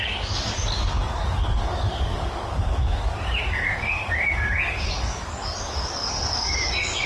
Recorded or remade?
remade